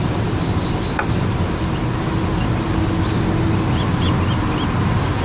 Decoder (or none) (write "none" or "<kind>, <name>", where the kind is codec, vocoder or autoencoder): none